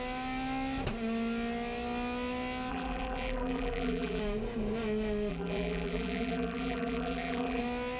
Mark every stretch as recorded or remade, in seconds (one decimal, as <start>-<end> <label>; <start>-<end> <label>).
0.0-2.7 recorded; 2.7-4.2 remade; 4.2-5.3 recorded; 5.3-7.6 remade; 7.6-8.0 recorded